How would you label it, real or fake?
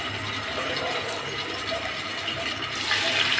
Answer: real